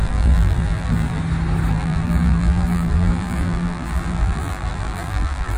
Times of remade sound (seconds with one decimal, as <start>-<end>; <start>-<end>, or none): 0.0-1.2; 1.7-5.6